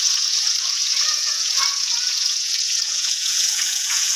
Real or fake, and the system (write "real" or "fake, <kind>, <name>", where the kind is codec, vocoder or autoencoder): fake, vocoder, Vocos